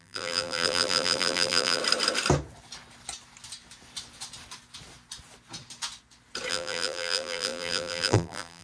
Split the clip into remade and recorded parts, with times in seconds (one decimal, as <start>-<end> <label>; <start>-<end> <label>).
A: 0.0-1.8 remade; 1.8-6.5 recorded; 6.5-8.6 remade